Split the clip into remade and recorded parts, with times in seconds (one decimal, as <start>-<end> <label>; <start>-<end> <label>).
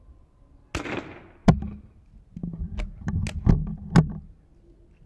0.0-5.1 recorded